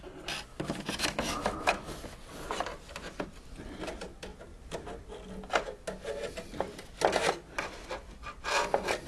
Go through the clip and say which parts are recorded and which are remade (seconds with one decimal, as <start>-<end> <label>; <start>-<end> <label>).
0.0-0.5 recorded; 0.5-1.9 remade; 1.9-9.1 recorded